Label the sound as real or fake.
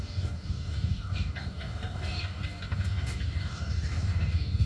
fake